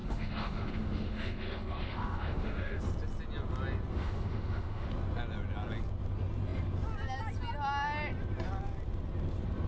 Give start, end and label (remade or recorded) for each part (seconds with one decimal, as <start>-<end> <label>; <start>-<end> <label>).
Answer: 0.0-2.8 remade; 2.8-3.9 recorded; 3.9-4.9 remade; 4.9-9.7 recorded